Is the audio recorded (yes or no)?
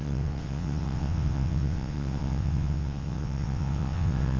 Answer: no